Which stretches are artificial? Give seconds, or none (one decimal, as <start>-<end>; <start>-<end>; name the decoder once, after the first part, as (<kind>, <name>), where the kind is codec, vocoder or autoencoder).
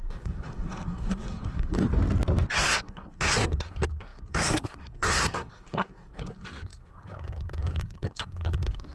0.0-1.8 (codec, SNAC); 2.5-8.9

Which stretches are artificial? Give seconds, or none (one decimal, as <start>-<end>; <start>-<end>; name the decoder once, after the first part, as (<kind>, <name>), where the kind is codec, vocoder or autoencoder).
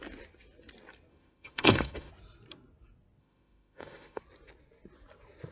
1.1-2.1 (autoencoder, DAC-VAE); 3.2-4.2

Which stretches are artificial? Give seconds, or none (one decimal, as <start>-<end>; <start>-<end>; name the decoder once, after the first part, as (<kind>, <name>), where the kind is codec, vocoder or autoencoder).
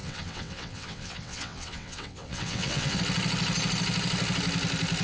0.0-3.0 (vocoder, WaveNeXt)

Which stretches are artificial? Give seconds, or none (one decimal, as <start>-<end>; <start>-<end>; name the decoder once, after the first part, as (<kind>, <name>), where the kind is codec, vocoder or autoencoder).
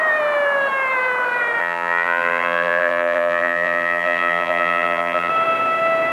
1.6-5.3 (vocoder, BigVGAN v2)